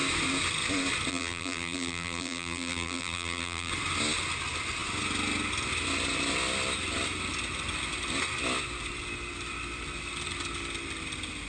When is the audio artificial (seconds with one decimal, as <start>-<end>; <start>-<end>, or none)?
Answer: 1.1-3.7